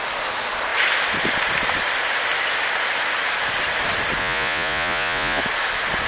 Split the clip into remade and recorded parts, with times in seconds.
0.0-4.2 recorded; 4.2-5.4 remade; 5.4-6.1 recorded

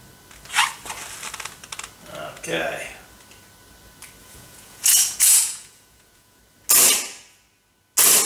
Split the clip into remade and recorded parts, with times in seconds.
0.0-4.2 recorded; 4.2-6.4 remade; 6.4-8.3 recorded